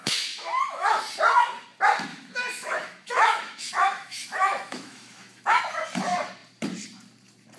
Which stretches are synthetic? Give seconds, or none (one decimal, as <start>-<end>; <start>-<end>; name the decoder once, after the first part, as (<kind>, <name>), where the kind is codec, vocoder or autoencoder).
0.0-1.0 (autoencoder, DAC-VAE); 2.1-5.6

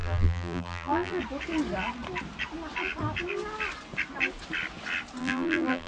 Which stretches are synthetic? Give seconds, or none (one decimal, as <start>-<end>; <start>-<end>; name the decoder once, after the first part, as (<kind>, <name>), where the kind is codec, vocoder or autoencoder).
0.0-1.2 (vocoder, BigVGAN v2); 5.2-5.9

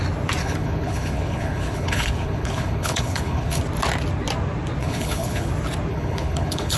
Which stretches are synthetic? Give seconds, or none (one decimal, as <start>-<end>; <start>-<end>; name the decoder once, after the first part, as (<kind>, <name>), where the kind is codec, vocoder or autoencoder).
0.4-3.6 (codec, HILCodec); 4.8-5.5; 5.9-6.8

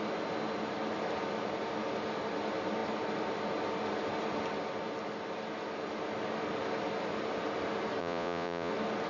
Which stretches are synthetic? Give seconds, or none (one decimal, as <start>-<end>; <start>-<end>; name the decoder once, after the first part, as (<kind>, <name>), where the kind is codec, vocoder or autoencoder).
8.0-8.7 (vocoder, Vocos)

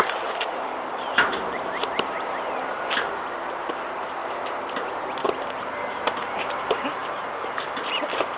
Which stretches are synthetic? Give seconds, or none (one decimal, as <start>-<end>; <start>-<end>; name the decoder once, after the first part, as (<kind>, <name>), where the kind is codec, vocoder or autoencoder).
0.0-4.2 (vocoder, BigVGAN v2); 4.7-8.4

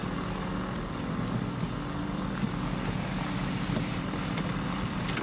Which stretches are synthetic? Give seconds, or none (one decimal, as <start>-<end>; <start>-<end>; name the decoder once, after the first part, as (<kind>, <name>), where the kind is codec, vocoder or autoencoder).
2.0-5.2 (vocoder, BigVGAN v2)

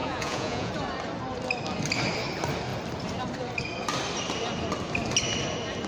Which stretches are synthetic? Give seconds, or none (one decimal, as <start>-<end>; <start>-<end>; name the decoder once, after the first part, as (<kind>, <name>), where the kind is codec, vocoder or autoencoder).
0.0-0.7 (vocoder, Vocos)